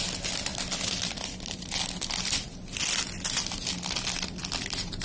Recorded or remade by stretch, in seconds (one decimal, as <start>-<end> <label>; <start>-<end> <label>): 0.0-5.0 recorded

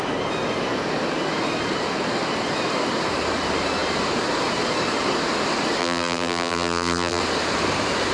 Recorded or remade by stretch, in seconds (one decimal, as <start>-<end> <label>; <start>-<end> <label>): 0.0-5.8 recorded; 5.8-7.2 remade; 7.2-8.1 recorded

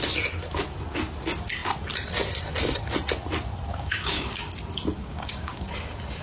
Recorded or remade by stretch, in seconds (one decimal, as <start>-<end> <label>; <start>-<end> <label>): 0.0-3.7 recorded; 3.7-4.4 remade; 4.4-5.0 recorded; 5.0-5.7 remade; 5.7-6.2 recorded

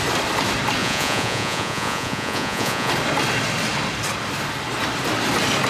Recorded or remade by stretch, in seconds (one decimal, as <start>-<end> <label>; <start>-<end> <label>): 0.0-0.8 recorded; 0.8-2.9 remade; 2.9-5.7 recorded

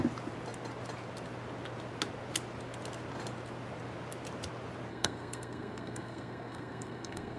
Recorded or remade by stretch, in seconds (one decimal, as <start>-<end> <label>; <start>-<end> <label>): 0.0-4.9 recorded; 4.9-7.4 remade

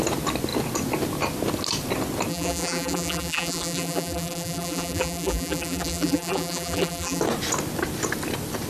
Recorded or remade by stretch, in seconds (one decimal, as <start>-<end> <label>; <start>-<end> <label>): 0.0-2.3 recorded; 2.3-7.2 remade; 7.2-8.7 recorded